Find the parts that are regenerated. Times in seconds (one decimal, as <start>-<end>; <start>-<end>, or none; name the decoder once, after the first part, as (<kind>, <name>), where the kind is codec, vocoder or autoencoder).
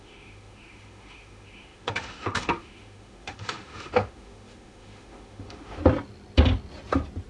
0.0-5.8 (autoencoder, DAC-VAE)